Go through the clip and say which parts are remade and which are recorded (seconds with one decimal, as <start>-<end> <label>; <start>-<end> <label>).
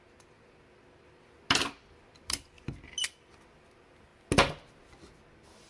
0.0-5.7 recorded